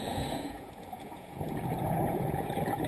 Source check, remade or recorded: remade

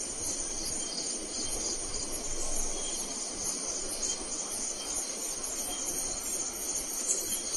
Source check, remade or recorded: recorded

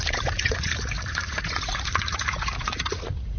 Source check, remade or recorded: remade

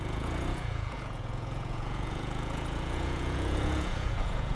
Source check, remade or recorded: remade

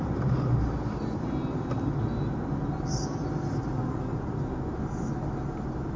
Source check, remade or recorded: recorded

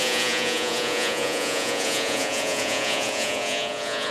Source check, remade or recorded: remade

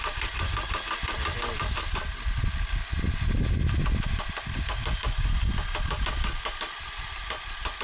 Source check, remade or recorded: recorded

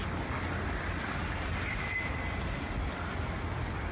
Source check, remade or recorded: recorded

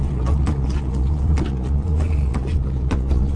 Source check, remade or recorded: remade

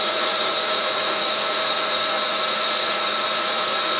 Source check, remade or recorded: remade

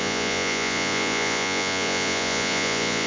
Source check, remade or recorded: remade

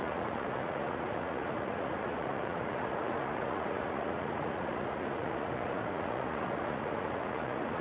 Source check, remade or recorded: remade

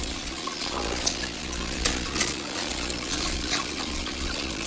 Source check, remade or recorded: remade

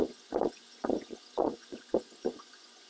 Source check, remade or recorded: remade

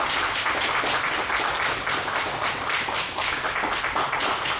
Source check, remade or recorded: recorded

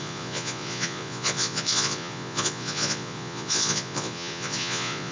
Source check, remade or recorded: remade